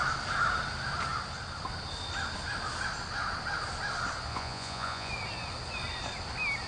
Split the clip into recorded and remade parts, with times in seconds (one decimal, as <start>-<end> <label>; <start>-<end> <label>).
0.0-4.3 recorded; 4.3-5.1 remade; 5.1-6.7 recorded